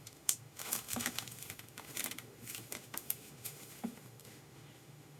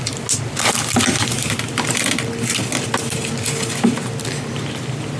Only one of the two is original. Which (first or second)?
second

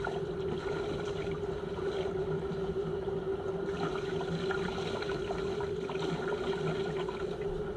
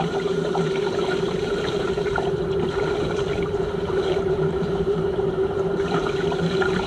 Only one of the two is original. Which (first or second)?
first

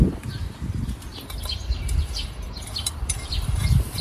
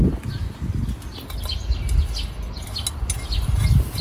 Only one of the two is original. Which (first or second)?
second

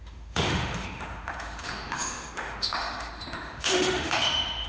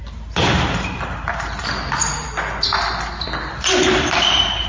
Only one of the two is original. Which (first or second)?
second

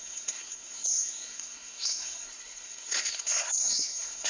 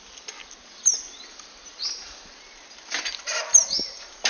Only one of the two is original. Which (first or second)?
second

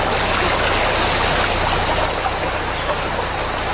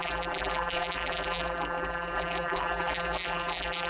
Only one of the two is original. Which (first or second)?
first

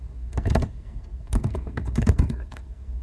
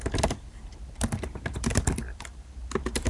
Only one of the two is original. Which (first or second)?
second